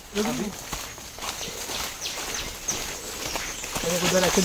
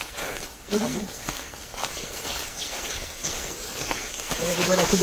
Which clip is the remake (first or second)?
second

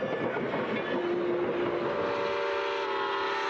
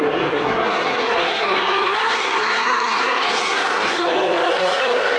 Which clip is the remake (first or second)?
second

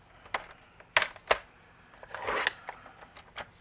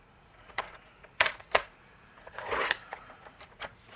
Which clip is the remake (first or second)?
second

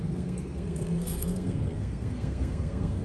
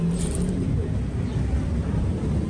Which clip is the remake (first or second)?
first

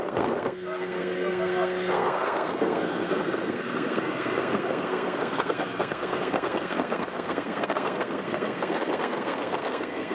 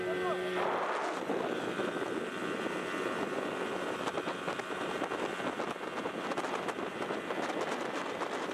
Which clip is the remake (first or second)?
first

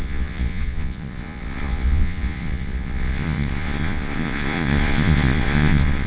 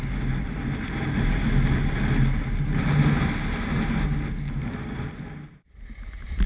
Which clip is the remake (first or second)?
first